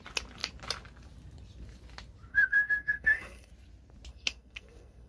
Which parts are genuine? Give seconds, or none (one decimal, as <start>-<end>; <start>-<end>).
0.0-2.3; 3.5-4.1